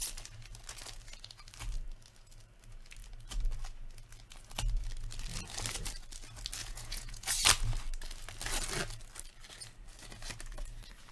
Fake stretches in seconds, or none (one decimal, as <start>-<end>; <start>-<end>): 6.6-7.3